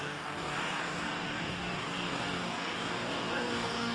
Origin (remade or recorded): remade